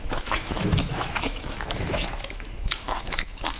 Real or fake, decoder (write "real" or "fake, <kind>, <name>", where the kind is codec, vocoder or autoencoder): fake, autoencoder, DAC-VAE